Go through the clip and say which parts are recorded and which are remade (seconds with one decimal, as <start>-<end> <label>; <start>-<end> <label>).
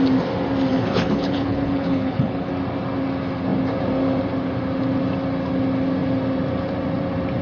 0.0-0.7 recorded; 0.7-2.5 remade; 2.5-7.4 recorded